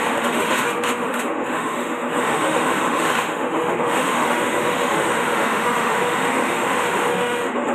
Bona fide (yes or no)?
no